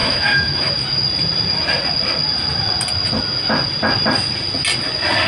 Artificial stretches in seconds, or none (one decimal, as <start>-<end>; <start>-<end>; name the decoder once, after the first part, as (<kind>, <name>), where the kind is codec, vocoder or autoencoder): 0.0-0.7 (autoencoder, DAC-VAE)